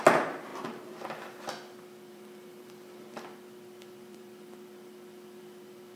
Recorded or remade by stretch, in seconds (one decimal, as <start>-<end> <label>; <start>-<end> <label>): 0.0-0.5 remade; 0.5-2.1 recorded; 2.1-6.0 remade